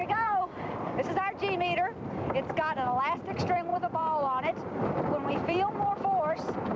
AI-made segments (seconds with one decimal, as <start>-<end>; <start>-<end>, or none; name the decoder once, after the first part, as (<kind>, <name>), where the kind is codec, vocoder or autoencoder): 0.0-1.1 (vocoder, BigVGAN v2); 3.7-6.0